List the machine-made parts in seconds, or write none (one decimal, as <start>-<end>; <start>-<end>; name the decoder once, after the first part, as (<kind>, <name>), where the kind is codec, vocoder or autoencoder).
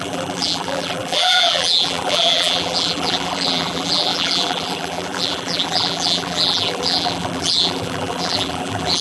0.0-9.0 (vocoder, BigVGAN v2)